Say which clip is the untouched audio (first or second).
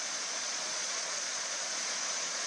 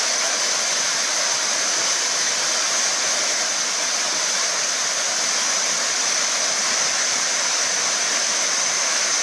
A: second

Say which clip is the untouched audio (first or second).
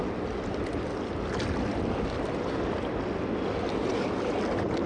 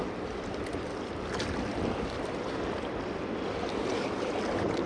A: first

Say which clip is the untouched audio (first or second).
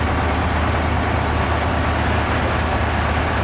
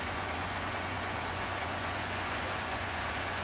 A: first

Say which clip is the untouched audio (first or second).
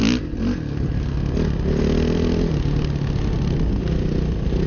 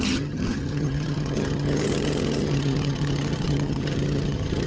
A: first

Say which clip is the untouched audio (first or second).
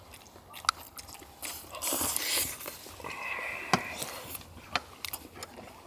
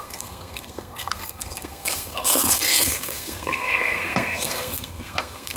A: first